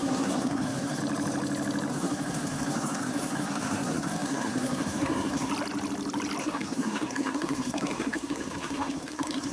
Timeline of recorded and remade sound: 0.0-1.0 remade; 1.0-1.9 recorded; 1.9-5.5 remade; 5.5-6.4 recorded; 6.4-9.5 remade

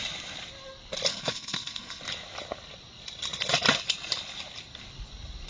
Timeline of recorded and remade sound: 0.0-1.1 recorded; 1.1-2.0 remade; 2.0-5.5 recorded

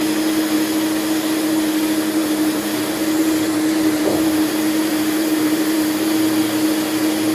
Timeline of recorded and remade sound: 0.0-2.2 recorded; 2.2-4.5 remade; 4.5-4.9 recorded; 4.9-6.0 remade; 6.0-7.3 recorded

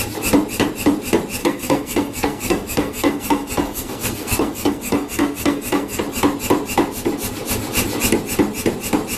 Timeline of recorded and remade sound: 0.0-1.4 recorded; 1.4-6.0 remade; 6.0-9.2 recorded

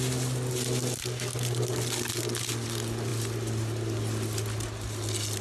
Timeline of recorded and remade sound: 0.0-5.4 recorded

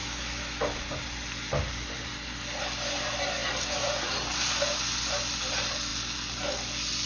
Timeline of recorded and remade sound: 0.0-0.8 remade; 0.8-7.1 recorded

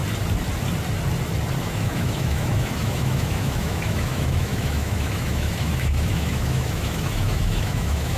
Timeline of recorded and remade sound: 0.0-1.6 recorded; 1.6-8.2 remade